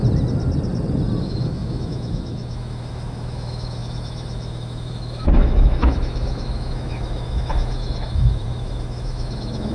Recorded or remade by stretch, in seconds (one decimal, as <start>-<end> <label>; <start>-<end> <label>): 0.0-1.2 recorded; 1.2-9.7 remade